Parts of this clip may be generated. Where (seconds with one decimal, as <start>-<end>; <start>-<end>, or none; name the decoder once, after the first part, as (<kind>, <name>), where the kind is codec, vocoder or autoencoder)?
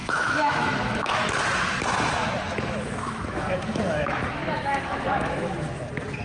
0.0-1.3 (autoencoder, DAC-VAE); 2.4-5.7